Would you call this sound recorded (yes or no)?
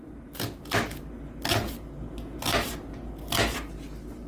yes